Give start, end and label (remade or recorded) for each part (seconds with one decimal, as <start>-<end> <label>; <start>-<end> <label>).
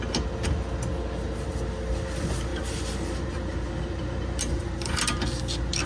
0.0-2.5 recorded; 2.5-5.0 remade; 5.0-5.9 recorded